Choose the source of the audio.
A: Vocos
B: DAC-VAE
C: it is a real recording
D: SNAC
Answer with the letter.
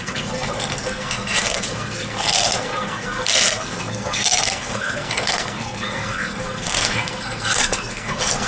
D